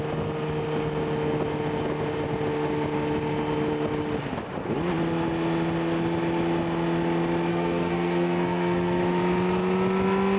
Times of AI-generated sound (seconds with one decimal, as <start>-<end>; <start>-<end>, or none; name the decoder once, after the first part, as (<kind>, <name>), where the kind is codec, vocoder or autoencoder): 7.5-9.0 (codec, SNAC)

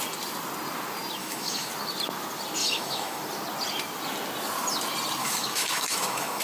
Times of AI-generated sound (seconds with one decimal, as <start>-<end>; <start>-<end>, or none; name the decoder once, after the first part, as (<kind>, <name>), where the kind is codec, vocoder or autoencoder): 1.2-1.7 (autoencoder, DAC-VAE); 2.6-3.2; 5.2-6.4